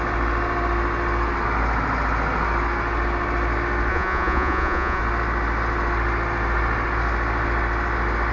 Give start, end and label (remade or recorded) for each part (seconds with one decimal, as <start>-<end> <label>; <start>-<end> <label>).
0.0-3.9 recorded; 3.9-5.0 remade; 5.0-8.3 recorded